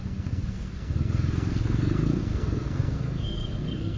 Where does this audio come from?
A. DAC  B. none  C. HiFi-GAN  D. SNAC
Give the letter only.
D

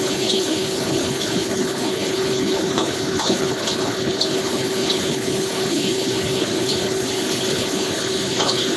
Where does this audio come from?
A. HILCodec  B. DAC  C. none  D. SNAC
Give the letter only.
A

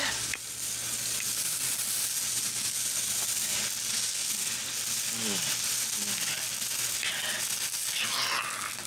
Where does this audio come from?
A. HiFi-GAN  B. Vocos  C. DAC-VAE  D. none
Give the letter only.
D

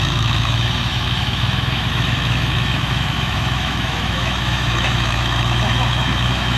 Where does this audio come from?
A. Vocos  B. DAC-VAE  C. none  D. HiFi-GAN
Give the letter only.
B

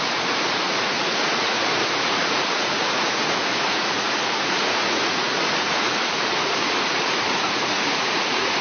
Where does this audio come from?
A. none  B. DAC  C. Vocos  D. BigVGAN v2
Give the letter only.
C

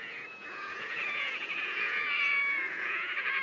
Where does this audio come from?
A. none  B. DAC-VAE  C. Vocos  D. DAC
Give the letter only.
C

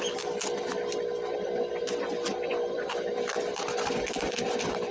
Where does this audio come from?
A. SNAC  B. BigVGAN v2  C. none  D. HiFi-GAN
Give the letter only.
C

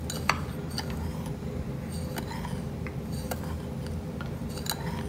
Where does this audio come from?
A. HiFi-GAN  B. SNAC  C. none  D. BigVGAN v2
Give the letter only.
C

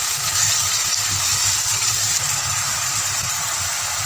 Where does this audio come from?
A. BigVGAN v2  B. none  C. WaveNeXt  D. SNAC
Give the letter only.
A